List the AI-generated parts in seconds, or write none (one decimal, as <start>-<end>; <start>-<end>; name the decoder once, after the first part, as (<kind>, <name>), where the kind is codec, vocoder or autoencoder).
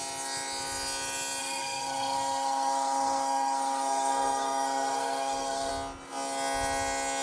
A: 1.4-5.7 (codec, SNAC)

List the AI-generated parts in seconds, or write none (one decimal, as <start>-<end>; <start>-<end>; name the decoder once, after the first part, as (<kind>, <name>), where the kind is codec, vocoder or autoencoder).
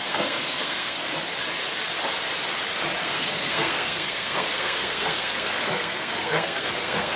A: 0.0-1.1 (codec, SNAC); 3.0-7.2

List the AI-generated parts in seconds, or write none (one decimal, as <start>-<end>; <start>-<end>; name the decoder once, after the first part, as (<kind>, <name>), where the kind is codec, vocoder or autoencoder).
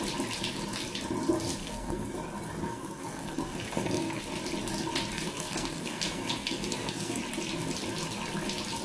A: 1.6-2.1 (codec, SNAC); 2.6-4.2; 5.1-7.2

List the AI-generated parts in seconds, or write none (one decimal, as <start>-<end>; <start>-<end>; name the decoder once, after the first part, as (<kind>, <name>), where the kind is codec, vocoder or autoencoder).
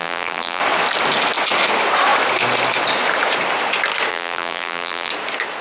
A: 0.0-0.6 (vocoder, BigVGAN v2); 4.1-5.1